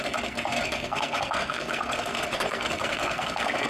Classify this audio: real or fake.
fake